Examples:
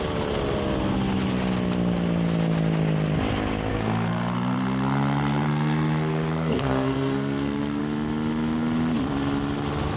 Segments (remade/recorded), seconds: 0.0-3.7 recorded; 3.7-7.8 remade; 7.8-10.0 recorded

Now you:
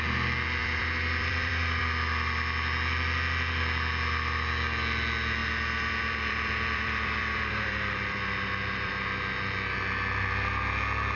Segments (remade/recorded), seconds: 0.0-0.6 recorded; 0.6-1.8 remade; 1.8-5.4 recorded; 5.4-8.9 remade; 8.9-11.2 recorded

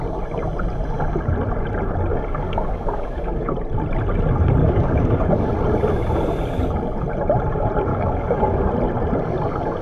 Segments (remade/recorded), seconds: 0.0-2.1 recorded; 2.1-3.5 remade; 3.5-4.6 recorded; 4.6-5.5 remade; 5.5-7.9 recorded; 7.9-8.7 remade; 8.7-9.8 recorded

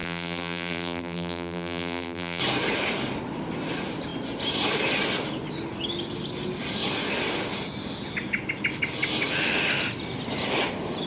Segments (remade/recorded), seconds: 0.0-2.4 remade; 2.4-11.1 recorded

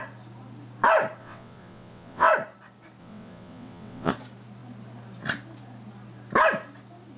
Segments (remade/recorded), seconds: 0.0-1.2 recorded; 1.2-2.3 remade; 2.3-3.0 recorded; 3.0-4.1 remade; 4.1-7.2 recorded

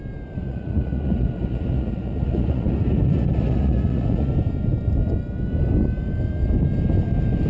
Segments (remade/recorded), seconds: 0.0-0.4 recorded; 0.4-4.3 remade; 4.3-7.5 recorded

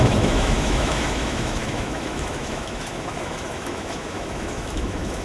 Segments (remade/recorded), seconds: 0.0-5.2 remade